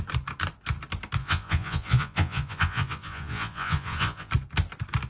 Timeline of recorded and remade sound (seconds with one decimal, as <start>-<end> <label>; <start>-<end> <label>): 0.0-1.2 recorded; 1.2-4.3 remade; 4.3-5.1 recorded